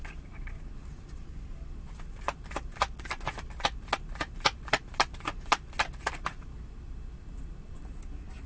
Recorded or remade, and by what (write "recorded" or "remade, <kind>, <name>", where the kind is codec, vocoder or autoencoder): recorded